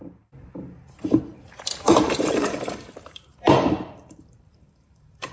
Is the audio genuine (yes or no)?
no